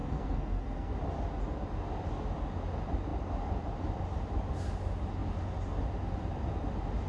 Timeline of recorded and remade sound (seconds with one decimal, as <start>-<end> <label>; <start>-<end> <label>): 0.0-0.9 remade; 0.9-7.1 recorded